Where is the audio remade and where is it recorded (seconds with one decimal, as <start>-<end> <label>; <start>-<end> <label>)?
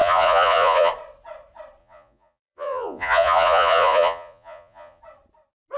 0.0-0.9 remade; 0.9-1.8 recorded; 1.8-5.0 remade; 5.0-5.8 recorded